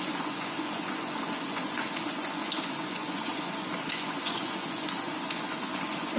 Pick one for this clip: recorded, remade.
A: remade